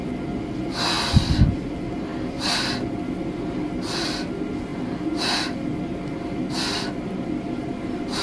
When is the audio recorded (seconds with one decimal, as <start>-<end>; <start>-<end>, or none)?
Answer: 0.0-2.1; 2.9-8.2